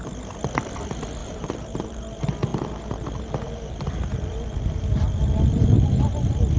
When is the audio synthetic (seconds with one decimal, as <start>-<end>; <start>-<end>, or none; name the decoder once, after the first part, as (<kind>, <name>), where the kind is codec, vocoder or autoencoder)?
1.2-2.0 (vocoder, BigVGAN v2)